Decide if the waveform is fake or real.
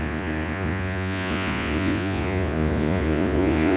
fake